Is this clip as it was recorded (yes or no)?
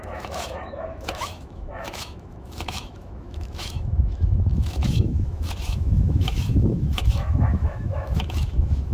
no